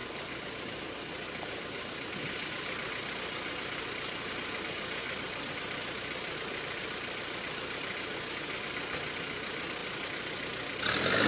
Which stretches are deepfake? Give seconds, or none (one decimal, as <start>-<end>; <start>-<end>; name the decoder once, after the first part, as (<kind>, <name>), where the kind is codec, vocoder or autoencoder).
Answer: 5.0-5.5 (vocoder, BigVGAN v2)